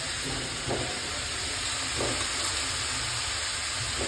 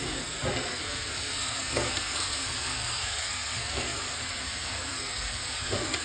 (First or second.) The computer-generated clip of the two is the second